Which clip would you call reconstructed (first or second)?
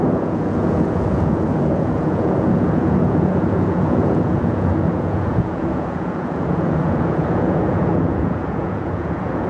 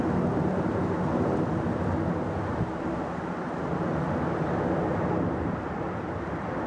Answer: first